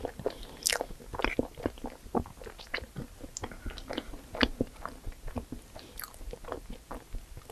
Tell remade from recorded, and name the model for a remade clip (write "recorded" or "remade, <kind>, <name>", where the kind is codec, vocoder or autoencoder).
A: recorded